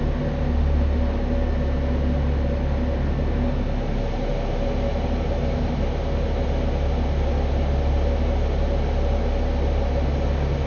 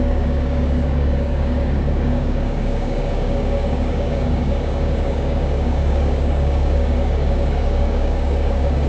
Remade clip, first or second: second